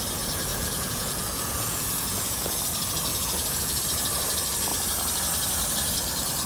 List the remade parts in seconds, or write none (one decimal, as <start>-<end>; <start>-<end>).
0.5-2.6; 3.1-3.8